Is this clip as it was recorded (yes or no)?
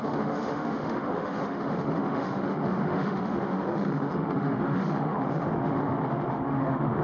no